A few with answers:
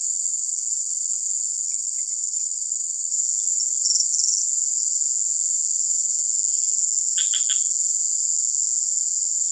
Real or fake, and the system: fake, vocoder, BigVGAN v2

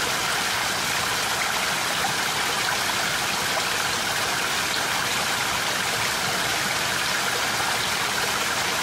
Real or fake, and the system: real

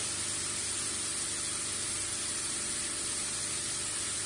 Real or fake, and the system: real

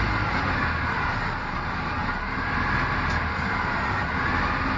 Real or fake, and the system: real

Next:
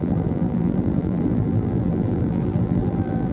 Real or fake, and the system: fake, vocoder, BigVGAN v2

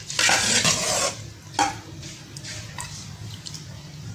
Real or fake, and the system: real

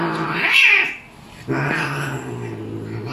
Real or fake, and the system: real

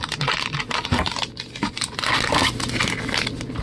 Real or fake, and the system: real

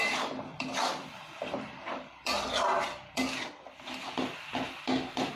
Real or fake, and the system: fake, vocoder, BigVGAN v2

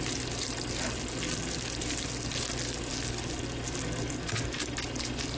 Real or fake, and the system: real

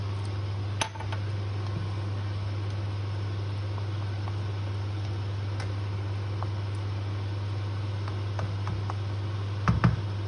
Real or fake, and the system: real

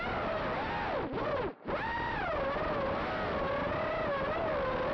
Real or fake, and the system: real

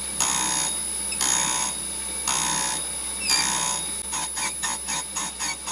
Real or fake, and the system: real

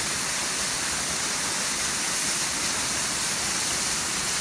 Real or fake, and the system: real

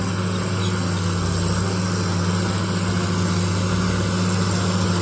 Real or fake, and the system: real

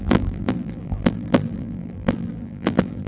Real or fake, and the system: fake, vocoder, BigVGAN v2